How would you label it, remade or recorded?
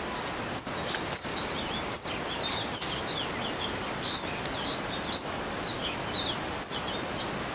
recorded